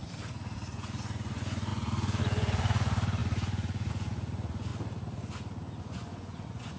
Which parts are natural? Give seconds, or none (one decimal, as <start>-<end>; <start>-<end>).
0.0-0.7; 4.7-5.8